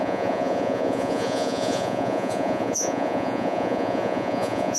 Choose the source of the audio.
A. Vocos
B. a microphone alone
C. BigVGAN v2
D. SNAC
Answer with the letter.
A